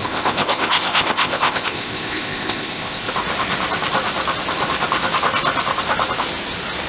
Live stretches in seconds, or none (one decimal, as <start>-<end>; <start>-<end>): 3.1-6.9